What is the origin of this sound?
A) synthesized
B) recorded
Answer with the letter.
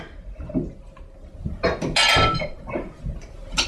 B